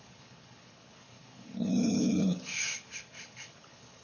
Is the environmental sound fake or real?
fake